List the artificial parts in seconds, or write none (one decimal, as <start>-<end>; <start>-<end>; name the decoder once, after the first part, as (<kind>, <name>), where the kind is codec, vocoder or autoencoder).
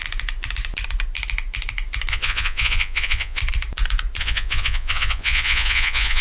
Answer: 2.1-3.4 (vocoder, Vocos); 4.2-6.2